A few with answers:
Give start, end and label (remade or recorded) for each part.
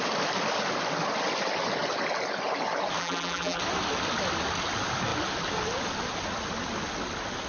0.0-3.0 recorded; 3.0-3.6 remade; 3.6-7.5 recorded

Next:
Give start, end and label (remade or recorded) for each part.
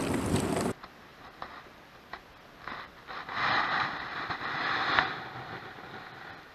0.0-1.1 recorded; 1.1-1.9 remade; 1.9-6.5 recorded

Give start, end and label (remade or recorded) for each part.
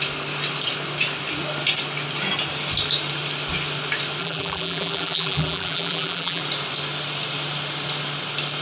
0.0-4.2 recorded; 4.2-6.4 remade; 6.4-8.6 recorded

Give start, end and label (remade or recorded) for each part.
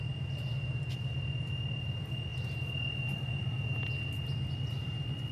0.0-2.3 remade; 2.3-4.5 recorded; 4.5-5.3 remade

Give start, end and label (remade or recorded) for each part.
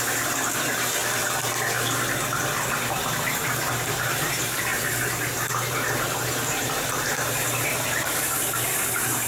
0.0-1.0 remade; 1.0-2.7 recorded; 2.7-9.3 remade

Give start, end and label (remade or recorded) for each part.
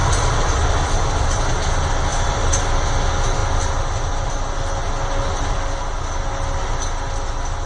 0.0-1.5 remade; 1.5-2.1 recorded; 2.1-2.9 remade; 2.9-7.7 recorded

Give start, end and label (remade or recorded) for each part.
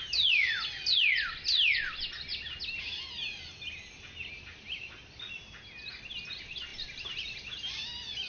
0.0-8.3 recorded